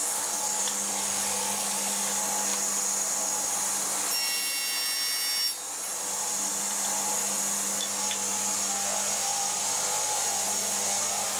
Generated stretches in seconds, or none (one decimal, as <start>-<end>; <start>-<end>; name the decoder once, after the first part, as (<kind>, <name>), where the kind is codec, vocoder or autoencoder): 0.0-1.9 (codec, DAC)